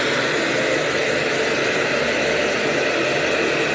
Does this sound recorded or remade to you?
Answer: recorded